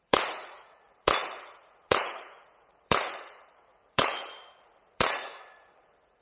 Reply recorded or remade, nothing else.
remade